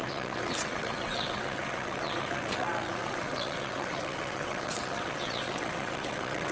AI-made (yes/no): yes